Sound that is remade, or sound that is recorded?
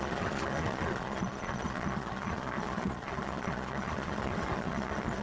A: remade